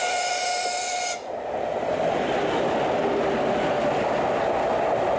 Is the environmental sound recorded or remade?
recorded